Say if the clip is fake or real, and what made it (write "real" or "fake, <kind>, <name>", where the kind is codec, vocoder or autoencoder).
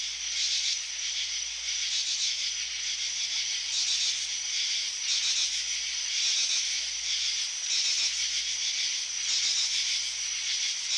real